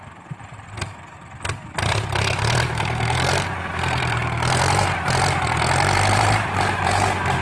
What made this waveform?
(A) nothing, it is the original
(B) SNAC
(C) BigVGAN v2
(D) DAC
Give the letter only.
C